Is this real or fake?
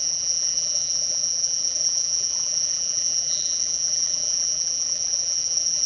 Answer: fake